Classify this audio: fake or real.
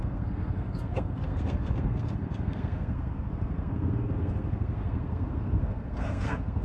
fake